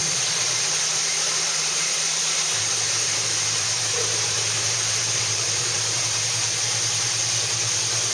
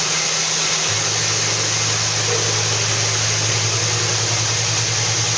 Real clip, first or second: second